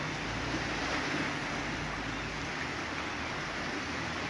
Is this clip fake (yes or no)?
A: no